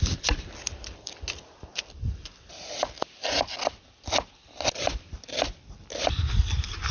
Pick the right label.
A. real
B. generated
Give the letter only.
A